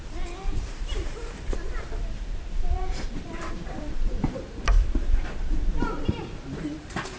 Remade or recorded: remade